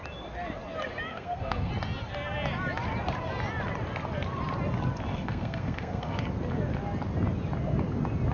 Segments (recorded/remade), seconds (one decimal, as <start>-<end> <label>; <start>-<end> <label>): 0.0-1.1 recorded; 1.1-1.7 remade; 1.7-5.1 recorded; 5.1-6.2 remade; 6.2-8.3 recorded